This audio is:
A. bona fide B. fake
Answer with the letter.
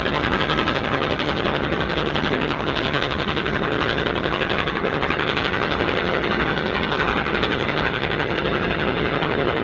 B